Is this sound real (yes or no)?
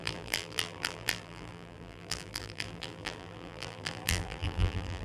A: no